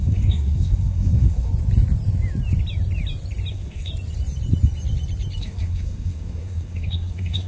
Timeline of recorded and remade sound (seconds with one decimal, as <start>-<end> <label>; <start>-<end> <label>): 0.0-1.5 remade; 1.5-3.5 recorded; 3.5-3.9 remade; 3.9-5.4 recorded; 5.4-7.5 remade